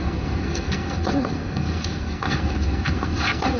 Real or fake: fake